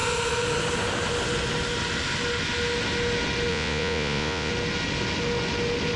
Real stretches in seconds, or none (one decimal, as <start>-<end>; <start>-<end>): 0.0-3.5; 4.5-6.0

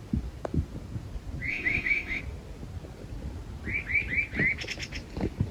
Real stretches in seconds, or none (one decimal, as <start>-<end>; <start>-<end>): 0.0-1.5; 2.2-5.5

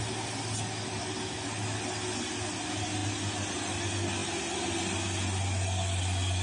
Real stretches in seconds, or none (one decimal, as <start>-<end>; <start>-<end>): 0.0-6.4

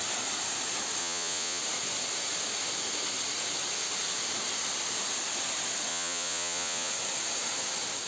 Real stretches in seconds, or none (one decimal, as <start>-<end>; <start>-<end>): 0.0-1.0; 1.6-5.9; 6.9-8.1

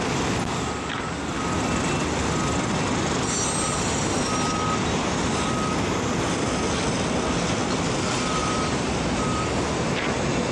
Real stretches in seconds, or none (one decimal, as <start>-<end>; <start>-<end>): 0.0-8.4; 9.5-10.5

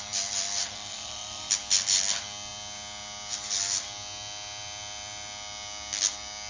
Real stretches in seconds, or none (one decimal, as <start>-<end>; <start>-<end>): 0.0-0.6; 1.5-6.5

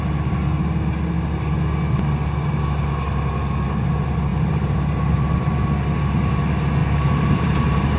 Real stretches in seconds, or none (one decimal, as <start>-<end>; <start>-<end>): 0.0-4.3; 5.7-6.8